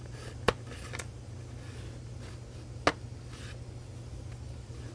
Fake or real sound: real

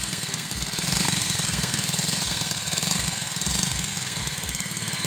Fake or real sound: fake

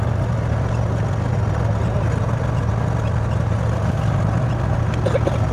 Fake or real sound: real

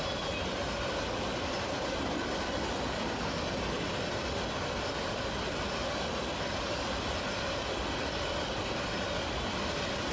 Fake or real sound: real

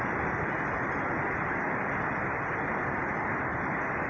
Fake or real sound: real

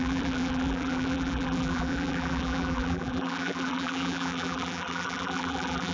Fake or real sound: fake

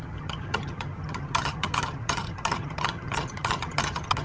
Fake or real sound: fake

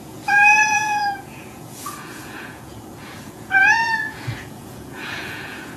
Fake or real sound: fake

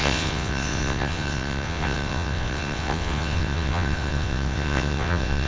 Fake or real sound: fake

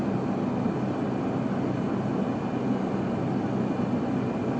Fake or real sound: real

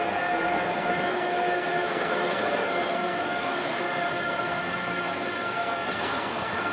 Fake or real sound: fake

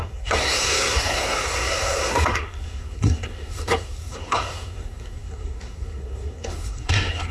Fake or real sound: fake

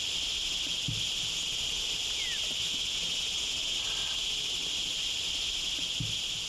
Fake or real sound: real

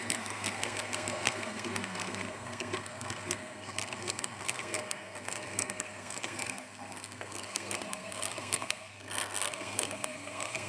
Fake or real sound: fake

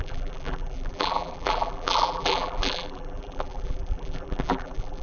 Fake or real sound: fake